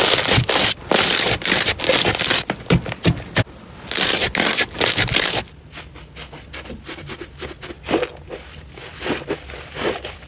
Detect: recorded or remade recorded